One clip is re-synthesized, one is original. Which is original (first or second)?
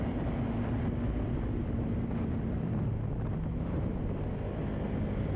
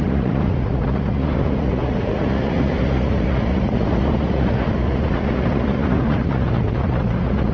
first